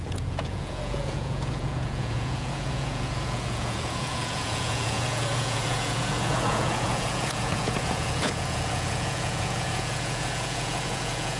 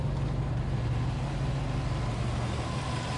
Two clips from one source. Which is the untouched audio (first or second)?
second